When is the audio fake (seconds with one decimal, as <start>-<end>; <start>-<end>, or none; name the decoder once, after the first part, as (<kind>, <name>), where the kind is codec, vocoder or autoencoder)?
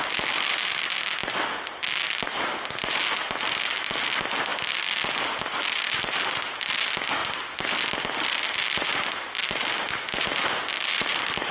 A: none